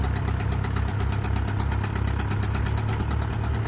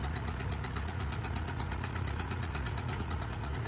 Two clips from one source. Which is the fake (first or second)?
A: second